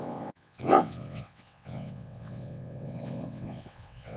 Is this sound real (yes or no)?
no